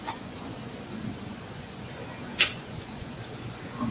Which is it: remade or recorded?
remade